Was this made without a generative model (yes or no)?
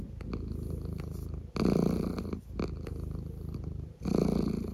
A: yes